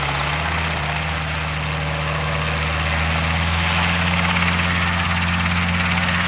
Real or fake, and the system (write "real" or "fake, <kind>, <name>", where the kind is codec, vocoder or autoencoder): real